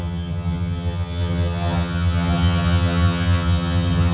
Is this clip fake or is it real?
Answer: fake